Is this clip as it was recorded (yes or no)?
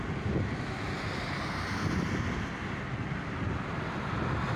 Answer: yes